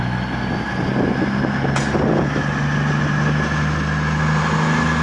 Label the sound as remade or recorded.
recorded